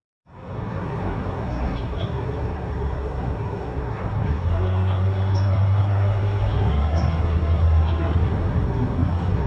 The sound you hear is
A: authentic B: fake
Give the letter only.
B